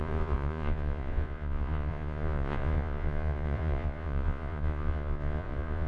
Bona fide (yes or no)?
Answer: no